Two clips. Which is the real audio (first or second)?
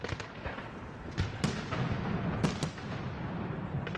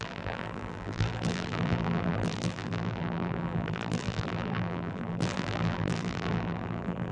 first